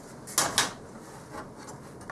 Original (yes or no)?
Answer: yes